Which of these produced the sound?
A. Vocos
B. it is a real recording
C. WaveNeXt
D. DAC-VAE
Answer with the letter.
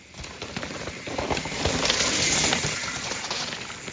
B